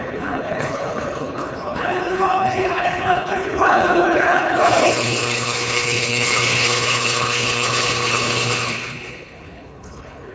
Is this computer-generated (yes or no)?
yes